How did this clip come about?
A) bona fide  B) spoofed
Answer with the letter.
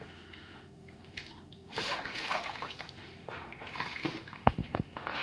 B